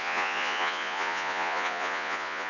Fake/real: fake